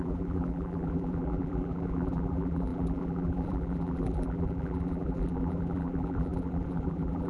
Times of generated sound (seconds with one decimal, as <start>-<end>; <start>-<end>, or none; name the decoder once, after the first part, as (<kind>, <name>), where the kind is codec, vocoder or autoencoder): 0.0-7.3 (vocoder, BigVGAN v2)